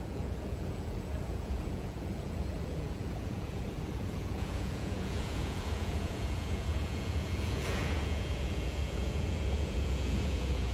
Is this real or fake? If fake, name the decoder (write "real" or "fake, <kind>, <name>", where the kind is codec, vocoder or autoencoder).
fake, vocoder, Vocos